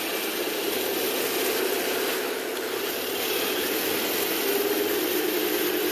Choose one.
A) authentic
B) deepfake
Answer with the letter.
A